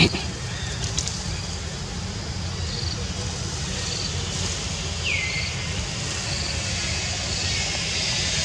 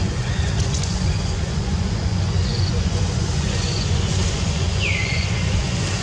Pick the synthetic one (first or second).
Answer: second